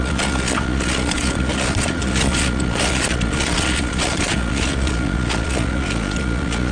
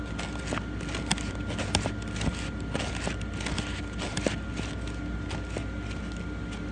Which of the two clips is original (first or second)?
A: second